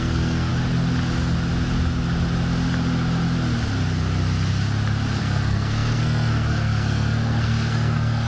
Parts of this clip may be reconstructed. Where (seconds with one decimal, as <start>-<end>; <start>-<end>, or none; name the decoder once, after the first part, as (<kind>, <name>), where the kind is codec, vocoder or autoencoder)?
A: 0.0-0.5 (codec, SNAC); 5.2-8.3